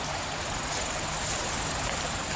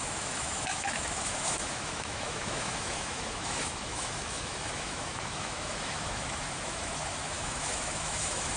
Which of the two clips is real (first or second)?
first